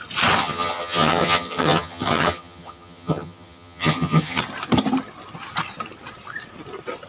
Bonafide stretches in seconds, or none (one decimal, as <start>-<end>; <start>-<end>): 0.0-0.4; 4.4-7.1